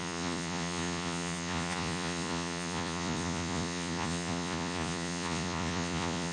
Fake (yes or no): yes